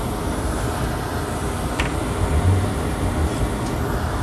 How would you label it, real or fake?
real